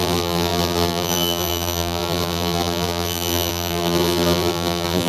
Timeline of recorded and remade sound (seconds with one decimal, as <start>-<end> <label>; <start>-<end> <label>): 0.0-5.1 remade

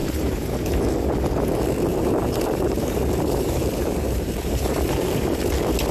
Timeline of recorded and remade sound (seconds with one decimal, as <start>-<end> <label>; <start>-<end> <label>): 0.0-0.8 remade; 0.8-1.9 recorded; 1.9-5.4 remade; 5.4-5.9 recorded

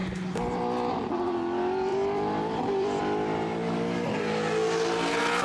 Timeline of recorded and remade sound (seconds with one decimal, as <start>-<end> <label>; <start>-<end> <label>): 0.0-1.9 recorded; 1.9-3.0 remade; 3.0-5.4 recorded